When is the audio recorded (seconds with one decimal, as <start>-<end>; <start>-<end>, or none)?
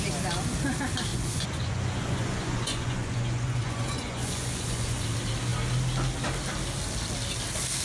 0.0-1.1; 5.0-7.8